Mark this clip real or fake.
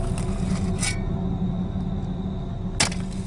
real